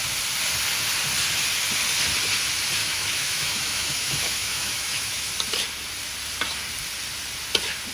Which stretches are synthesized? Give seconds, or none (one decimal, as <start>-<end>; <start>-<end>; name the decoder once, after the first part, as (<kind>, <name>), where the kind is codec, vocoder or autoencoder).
2.8-5.3 (autoencoder, DAC-VAE)